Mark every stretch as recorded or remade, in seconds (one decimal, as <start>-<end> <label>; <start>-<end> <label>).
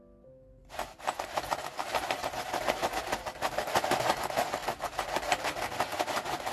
0.0-6.5 recorded